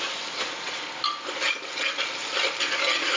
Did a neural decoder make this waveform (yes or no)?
no